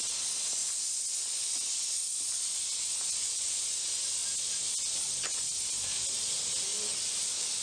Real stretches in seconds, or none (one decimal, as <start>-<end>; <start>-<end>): 0.0-3.2; 3.7-7.6